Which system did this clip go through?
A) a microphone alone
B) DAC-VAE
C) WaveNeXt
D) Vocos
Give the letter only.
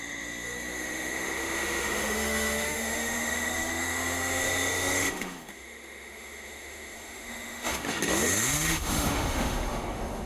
B